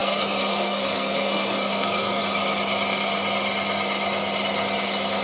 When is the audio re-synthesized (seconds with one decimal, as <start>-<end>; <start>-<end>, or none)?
0.0-2.2